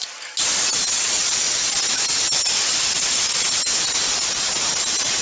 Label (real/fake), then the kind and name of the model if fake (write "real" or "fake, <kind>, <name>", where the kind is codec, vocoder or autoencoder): real